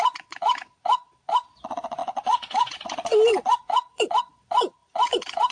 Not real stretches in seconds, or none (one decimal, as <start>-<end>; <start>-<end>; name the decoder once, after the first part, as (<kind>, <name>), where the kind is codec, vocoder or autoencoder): 0.0-5.5 (vocoder, Vocos)